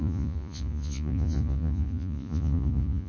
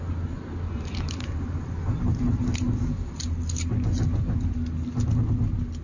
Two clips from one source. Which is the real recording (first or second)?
second